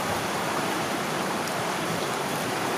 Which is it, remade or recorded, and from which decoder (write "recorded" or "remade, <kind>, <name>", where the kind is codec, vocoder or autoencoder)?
remade, vocoder, BigVGAN v2